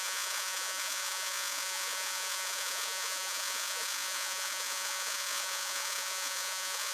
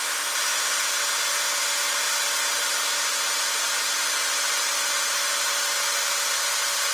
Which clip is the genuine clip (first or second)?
second